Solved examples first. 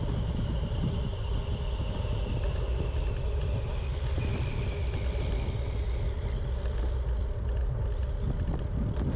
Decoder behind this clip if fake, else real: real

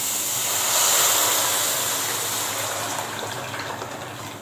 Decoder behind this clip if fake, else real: real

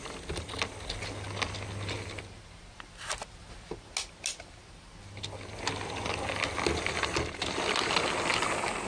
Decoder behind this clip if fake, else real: real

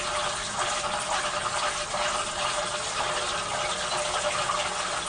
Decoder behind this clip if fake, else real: real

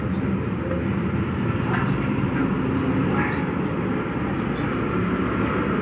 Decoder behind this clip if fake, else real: real